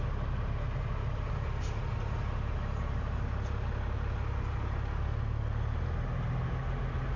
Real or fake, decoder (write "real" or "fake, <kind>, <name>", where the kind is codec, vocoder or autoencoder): real